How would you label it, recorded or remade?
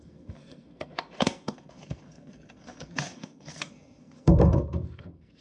remade